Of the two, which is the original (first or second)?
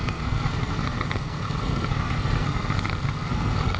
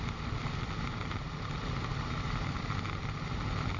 second